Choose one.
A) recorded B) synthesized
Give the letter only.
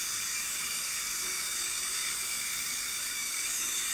B